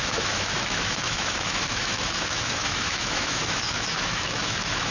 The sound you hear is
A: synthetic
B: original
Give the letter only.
A